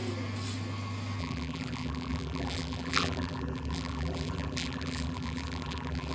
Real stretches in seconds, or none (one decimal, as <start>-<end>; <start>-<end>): 0.0-1.2